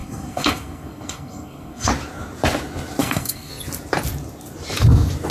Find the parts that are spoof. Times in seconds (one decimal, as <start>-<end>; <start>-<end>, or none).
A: 0.0-1.9; 3.0-3.5